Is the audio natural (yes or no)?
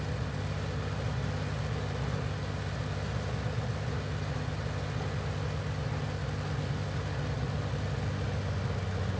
yes